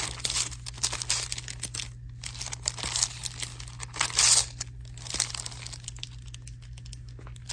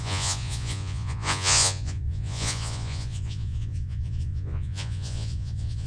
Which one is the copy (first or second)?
second